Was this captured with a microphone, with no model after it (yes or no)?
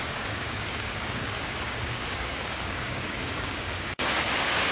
no